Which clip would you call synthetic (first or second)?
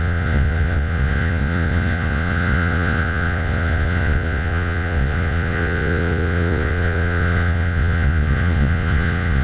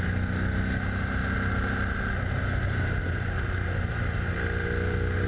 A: first